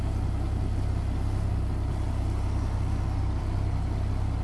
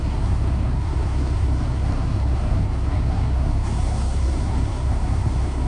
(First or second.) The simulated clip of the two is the second